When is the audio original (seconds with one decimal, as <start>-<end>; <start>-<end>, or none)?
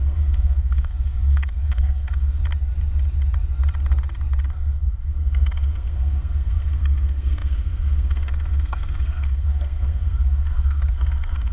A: 2.4-4.5